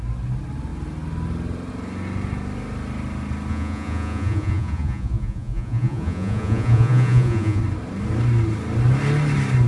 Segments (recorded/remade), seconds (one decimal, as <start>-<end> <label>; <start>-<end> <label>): 0.0-3.5 recorded; 3.5-7.6 remade; 7.6-9.7 recorded